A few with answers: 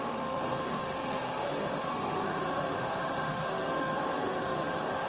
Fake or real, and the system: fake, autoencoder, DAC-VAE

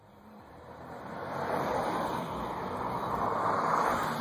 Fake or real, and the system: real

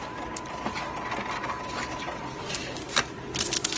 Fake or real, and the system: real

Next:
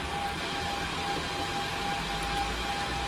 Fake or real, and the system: real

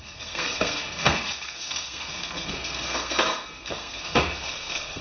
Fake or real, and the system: fake, codec, SNAC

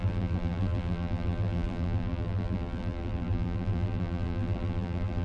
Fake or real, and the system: fake, vocoder, BigVGAN v2